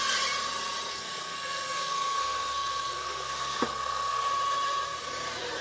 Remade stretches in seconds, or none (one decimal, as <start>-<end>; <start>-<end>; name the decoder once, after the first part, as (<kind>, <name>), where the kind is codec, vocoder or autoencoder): 0.9-4.3 (codec, SNAC)